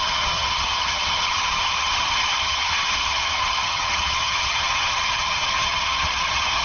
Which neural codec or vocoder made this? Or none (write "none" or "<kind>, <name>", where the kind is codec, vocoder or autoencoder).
vocoder, HiFi-GAN